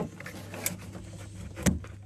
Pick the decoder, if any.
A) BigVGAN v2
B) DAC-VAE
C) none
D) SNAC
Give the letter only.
C